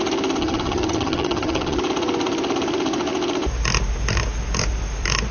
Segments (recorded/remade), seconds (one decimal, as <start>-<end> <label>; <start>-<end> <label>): 0.0-0.4 recorded; 0.4-1.8 remade; 1.8-5.3 recorded